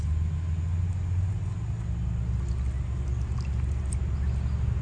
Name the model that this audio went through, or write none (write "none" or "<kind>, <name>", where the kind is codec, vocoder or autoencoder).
none